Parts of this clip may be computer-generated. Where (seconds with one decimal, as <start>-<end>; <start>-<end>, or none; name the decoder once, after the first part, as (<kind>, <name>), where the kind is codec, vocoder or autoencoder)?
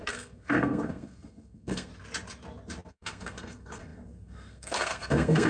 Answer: 0.0-1.9 (codec, SNAC); 2.9-5.5